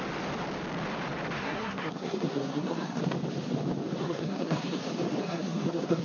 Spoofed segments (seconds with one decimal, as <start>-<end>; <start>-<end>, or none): 1.4-3.0; 4.0-4.8; 5.2-6.0